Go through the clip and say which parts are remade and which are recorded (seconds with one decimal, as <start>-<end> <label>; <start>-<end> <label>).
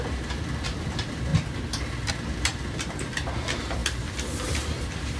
0.0-1.3 remade; 1.3-2.1 recorded; 2.1-3.8 remade; 3.8-4.6 recorded; 4.6-5.2 remade